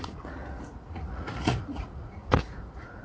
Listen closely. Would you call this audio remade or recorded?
remade